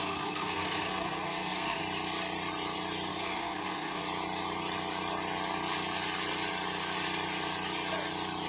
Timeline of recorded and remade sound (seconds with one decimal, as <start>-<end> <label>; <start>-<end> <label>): 0.0-1.8 remade; 1.8-3.1 recorded; 3.1-4.0 remade; 4.0-8.5 recorded